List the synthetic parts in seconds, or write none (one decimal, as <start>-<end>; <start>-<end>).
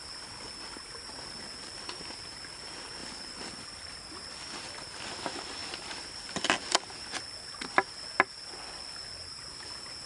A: 3.0-5.0; 5.6-6.9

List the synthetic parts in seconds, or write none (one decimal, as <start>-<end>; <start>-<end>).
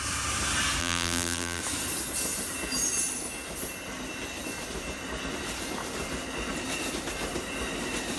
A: 0.8-1.6